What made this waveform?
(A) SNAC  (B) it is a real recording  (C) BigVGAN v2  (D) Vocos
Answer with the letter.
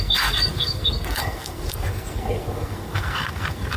A